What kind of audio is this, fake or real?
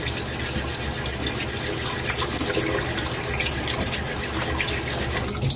real